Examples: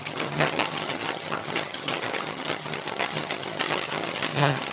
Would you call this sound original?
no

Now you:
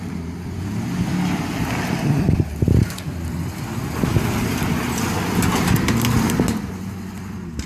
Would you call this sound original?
yes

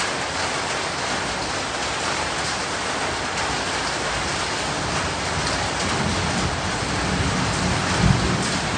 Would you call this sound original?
yes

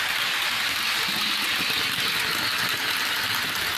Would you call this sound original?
yes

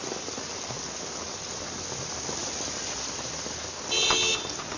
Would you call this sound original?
yes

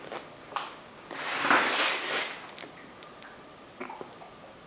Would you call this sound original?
yes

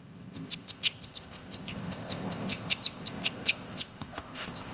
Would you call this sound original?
no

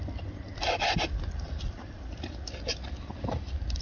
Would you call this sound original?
yes